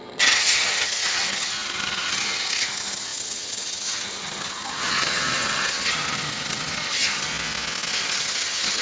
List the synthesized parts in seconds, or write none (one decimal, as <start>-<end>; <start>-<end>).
0.0-7.3; 7.9-8.8

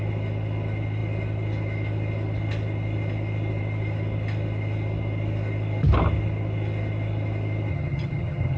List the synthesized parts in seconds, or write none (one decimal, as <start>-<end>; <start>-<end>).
7.7-8.6